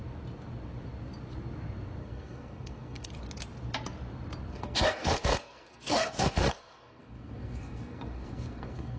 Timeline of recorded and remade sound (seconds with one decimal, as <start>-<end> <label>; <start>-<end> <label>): 0.0-2.0 recorded; 2.0-3.1 remade; 3.1-4.5 recorded; 4.5-9.0 remade

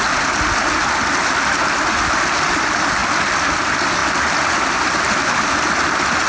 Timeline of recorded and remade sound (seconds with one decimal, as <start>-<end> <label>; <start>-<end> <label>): 0.0-6.3 recorded

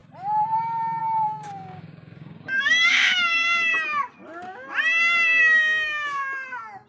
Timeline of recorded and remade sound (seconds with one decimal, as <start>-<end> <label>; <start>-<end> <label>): 0.0-1.0 recorded; 1.0-3.7 remade; 3.7-5.4 recorded; 5.4-6.2 remade; 6.2-6.9 recorded

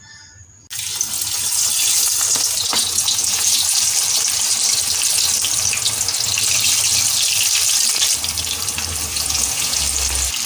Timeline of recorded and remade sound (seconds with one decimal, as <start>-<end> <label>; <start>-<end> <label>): 0.0-2.7 recorded; 2.7-3.5 remade; 3.5-9.1 recorded; 9.1-9.8 remade; 9.8-10.5 recorded

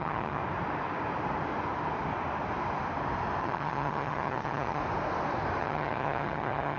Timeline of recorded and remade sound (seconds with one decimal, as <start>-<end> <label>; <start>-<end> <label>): 0.0-0.4 remade; 0.4-3.4 recorded; 3.4-4.8 remade; 4.8-5.6 recorded; 5.6-6.8 remade

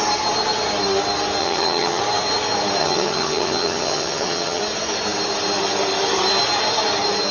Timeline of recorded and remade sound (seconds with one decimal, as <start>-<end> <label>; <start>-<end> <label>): 0.0-1.4 recorded; 1.4-2.0 remade; 2.0-2.8 recorded; 2.8-4.6 remade; 4.6-7.3 recorded

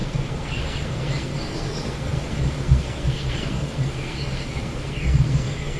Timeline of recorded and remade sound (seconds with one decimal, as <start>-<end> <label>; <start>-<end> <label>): 0.0-5.8 remade

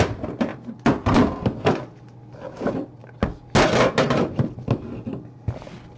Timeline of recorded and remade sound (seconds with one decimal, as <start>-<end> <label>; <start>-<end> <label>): 0.0-6.0 recorded